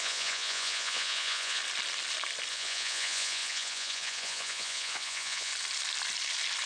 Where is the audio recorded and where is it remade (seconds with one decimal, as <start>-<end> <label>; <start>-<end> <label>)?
0.0-1.6 remade; 1.6-2.5 recorded; 2.5-5.5 remade; 5.5-6.7 recorded

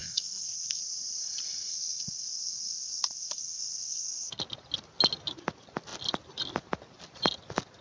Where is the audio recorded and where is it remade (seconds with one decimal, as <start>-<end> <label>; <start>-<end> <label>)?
0.0-0.8 remade; 0.8-1.7 recorded; 1.7-4.4 remade; 4.4-7.8 recorded

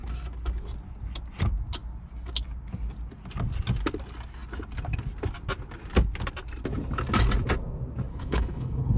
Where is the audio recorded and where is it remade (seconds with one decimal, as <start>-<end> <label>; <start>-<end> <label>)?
0.0-8.1 recorded; 8.1-9.0 remade

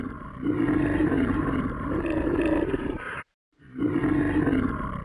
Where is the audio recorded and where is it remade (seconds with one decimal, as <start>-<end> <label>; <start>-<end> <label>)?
0.0-1.0 recorded; 1.0-4.0 remade; 4.0-5.0 recorded

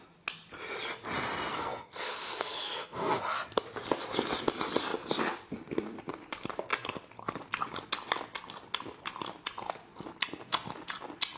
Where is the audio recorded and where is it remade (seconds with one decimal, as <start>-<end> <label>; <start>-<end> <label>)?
0.0-1.5 recorded; 1.5-3.2 remade; 3.2-11.4 recorded

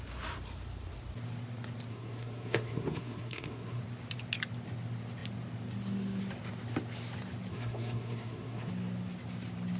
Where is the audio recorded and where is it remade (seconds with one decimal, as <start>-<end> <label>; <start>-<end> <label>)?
0.0-1.9 recorded; 1.9-3.8 remade; 3.8-7.5 recorded; 7.5-8.7 remade; 8.7-9.8 recorded

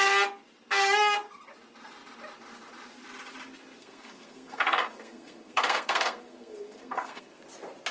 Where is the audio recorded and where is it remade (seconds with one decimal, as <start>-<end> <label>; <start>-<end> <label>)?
0.0-3.8 recorded; 3.8-7.4 remade; 7.4-7.9 recorded

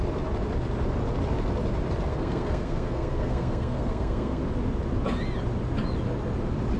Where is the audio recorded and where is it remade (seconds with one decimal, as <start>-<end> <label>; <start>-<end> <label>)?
0.0-2.1 recorded; 2.1-4.4 remade; 4.4-6.8 recorded